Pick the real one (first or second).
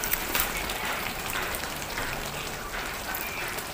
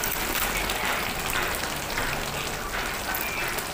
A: second